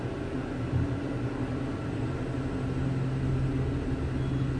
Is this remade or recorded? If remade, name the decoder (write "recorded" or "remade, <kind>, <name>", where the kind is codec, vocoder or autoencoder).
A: recorded